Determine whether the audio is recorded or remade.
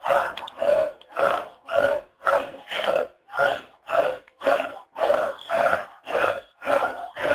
remade